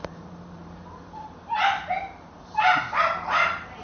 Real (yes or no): no